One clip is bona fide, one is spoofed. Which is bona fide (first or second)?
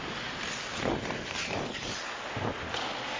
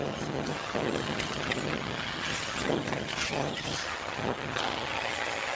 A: first